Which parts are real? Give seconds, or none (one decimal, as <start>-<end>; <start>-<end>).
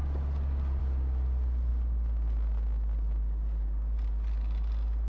0.0-5.1